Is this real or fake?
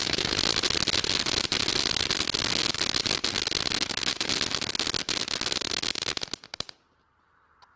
real